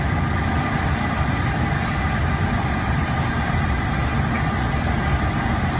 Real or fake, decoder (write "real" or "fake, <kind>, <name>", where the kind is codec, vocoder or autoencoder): real